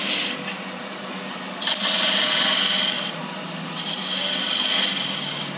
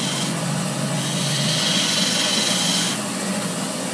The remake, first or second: second